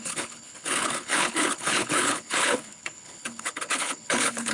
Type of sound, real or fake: fake